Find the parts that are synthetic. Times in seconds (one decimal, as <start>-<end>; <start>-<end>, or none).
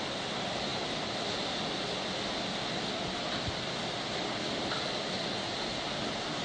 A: none